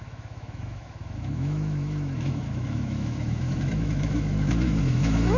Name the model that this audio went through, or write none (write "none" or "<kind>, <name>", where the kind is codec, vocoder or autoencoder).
autoencoder, DAC-VAE